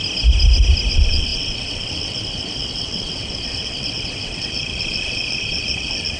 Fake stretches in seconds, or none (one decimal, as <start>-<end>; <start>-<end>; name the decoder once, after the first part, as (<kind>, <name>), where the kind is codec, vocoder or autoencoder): 0.9-6.2 (vocoder, WaveNeXt)